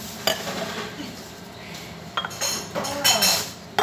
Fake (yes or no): no